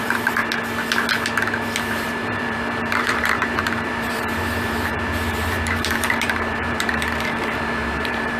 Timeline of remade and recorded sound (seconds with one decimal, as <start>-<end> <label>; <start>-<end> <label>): 0.0-0.4 remade; 0.4-1.8 recorded; 1.8-8.4 remade